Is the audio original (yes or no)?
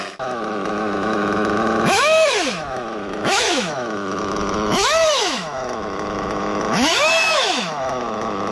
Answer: no